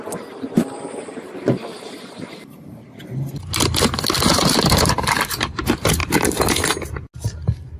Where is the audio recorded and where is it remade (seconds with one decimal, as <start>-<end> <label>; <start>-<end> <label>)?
0.0-3.1 remade; 3.1-4.4 recorded; 4.4-6.0 remade; 6.0-7.8 recorded